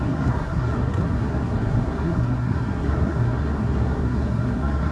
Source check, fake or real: fake